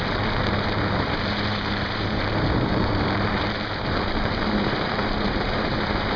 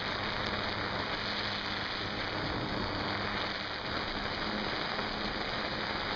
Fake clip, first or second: first